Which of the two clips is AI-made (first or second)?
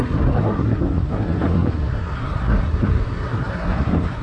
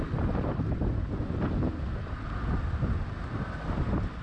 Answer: first